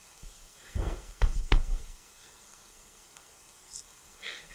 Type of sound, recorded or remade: remade